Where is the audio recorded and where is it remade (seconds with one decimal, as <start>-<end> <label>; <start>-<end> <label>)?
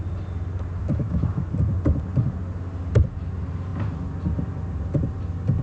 0.0-0.8 recorded; 0.8-1.5 remade; 1.5-5.6 recorded